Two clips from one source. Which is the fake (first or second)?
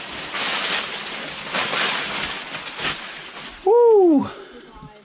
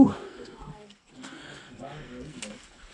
second